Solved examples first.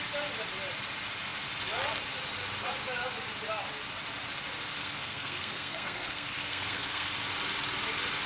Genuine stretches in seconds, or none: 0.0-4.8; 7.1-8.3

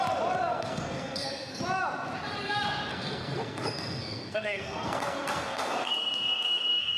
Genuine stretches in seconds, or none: 0.0-0.5; 1.6-2.9

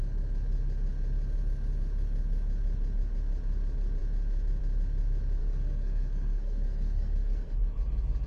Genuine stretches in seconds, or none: 0.0-5.4; 7.6-8.3

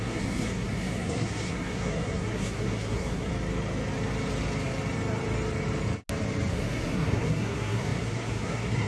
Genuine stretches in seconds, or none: 3.3-6.5

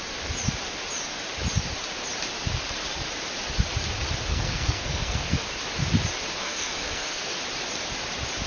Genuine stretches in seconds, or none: 0.0-4.3; 5.6-6.4; 7.3-8.5

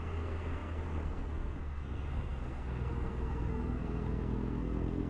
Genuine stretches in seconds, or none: none

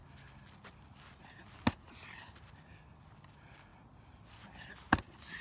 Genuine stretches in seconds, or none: 0.0-5.4